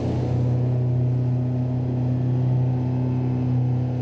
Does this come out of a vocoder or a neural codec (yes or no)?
no